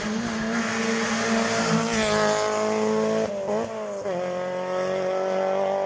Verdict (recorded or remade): recorded